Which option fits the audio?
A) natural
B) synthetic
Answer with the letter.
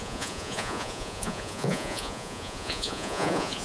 B